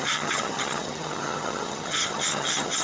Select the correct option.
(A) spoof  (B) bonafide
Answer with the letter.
A